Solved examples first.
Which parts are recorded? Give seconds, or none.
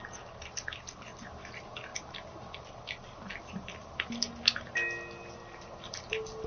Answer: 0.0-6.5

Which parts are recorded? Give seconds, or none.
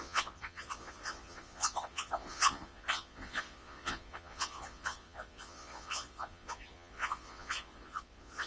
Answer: none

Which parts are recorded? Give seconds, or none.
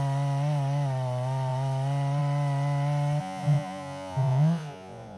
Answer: 0.0-3.2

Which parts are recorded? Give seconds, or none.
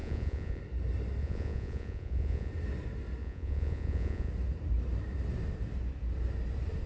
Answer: 0.6-1.2; 2.5-3.2; 4.3-6.9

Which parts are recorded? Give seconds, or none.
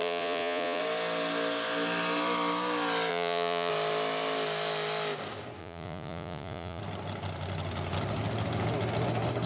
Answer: 0.8-3.1; 3.7-5.6; 6.8-9.5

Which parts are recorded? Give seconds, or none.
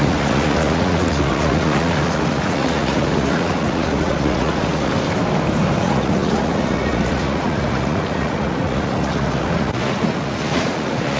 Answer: 4.9-5.8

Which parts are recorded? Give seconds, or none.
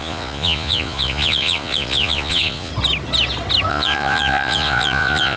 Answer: 2.7-3.7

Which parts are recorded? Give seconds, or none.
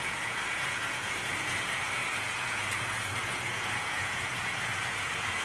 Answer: none